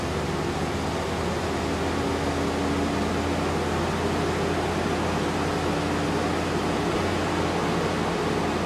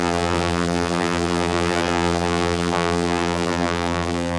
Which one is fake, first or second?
second